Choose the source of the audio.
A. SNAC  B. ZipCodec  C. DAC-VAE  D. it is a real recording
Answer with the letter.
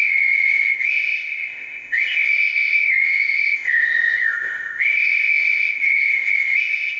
B